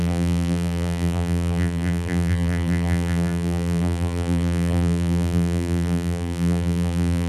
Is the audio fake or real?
fake